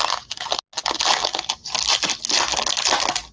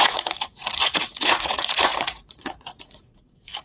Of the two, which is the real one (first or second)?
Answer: first